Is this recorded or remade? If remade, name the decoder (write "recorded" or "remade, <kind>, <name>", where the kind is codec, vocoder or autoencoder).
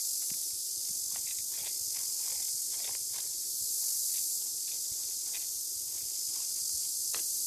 recorded